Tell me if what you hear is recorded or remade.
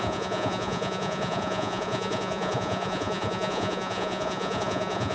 remade